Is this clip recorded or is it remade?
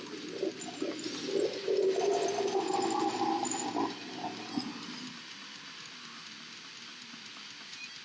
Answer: recorded